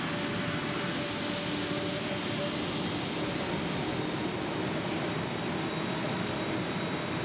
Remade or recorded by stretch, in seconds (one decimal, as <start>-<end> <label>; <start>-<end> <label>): 0.0-7.2 recorded